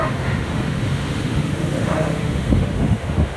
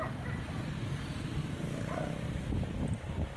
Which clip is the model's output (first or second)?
first